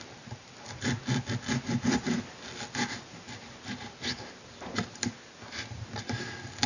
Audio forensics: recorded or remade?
recorded